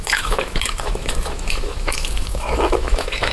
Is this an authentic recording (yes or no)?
no